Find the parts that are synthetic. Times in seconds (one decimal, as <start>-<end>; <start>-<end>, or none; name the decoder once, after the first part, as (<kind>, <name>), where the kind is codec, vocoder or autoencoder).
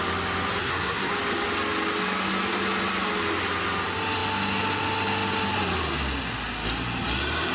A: 0.6-1.1 (codec, SNAC)